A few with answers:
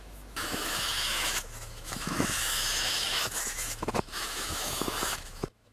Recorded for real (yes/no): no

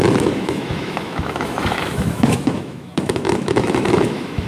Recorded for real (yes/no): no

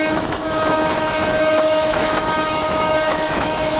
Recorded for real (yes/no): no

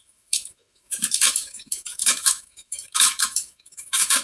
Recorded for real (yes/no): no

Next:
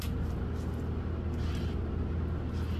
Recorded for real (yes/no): yes